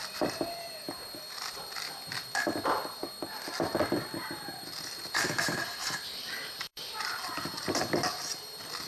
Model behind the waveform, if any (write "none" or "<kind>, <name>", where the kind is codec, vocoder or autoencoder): vocoder, BigVGAN v2